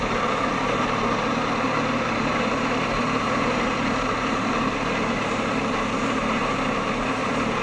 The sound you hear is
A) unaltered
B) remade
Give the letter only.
B